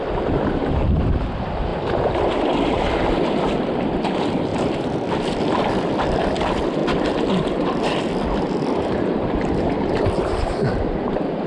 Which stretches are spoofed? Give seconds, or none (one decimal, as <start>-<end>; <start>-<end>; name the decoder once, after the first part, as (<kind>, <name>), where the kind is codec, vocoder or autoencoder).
0.0-1.7 (vocoder, BigVGAN v2); 3.6-11.5